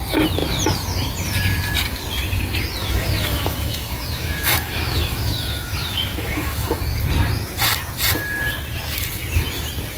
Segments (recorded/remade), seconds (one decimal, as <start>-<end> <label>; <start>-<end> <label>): 0.0-2.8 recorded; 2.8-6.8 remade; 6.8-10.0 recorded